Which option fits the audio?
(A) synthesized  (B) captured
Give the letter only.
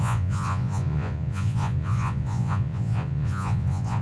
A